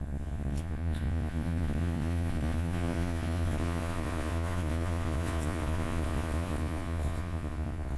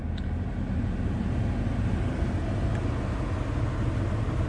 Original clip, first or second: second